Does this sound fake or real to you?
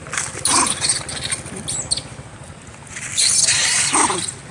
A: real